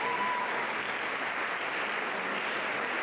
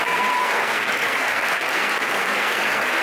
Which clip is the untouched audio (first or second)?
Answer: first